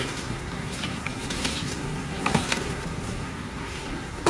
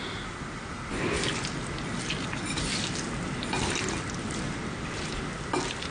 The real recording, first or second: second